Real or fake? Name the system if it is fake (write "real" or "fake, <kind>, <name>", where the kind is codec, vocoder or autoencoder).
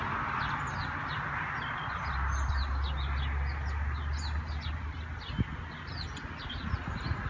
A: real